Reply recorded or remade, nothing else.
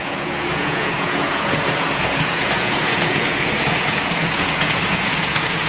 remade